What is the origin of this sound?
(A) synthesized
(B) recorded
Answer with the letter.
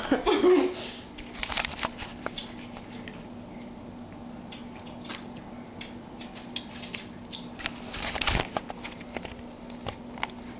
B